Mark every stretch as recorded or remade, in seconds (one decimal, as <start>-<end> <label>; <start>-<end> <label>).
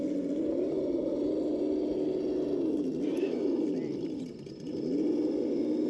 0.0-5.9 recorded